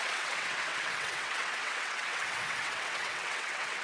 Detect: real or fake fake